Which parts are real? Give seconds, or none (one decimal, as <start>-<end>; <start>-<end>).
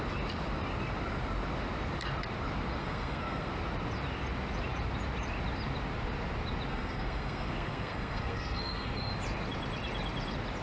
0.0-2.8; 3.5-6.7; 9.1-10.6